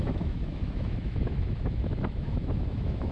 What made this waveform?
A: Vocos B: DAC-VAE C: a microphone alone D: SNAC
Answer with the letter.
B